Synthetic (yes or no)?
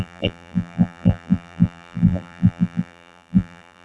yes